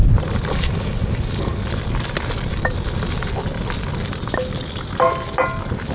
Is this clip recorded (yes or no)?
yes